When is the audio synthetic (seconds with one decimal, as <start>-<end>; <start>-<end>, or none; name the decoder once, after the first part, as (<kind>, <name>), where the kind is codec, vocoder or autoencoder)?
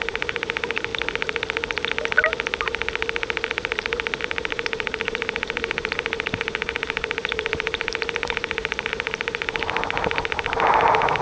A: 0.0-0.9 (vocoder, BigVGAN v2); 4.2-11.2